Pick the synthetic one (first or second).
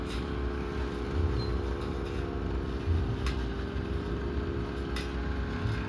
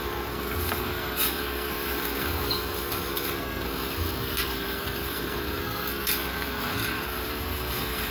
second